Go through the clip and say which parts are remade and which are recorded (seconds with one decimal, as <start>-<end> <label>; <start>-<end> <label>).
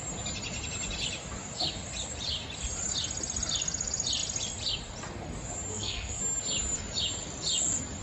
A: 0.0-5.7 recorded; 5.7-6.2 remade; 6.2-8.0 recorded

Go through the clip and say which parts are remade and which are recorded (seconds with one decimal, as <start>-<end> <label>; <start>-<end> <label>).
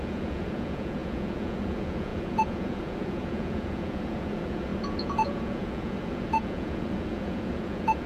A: 0.0-8.1 remade